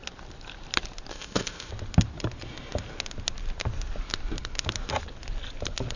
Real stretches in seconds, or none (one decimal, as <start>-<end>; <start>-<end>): 0.0-1.1; 1.7-6.0